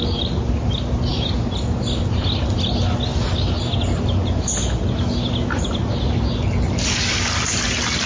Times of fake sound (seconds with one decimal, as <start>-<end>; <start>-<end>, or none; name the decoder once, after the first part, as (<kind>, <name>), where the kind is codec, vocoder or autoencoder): none